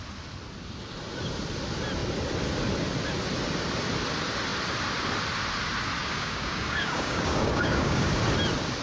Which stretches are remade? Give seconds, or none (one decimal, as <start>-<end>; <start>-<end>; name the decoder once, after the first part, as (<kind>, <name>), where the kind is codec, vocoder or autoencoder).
6.0-8.2 (codec, DAC)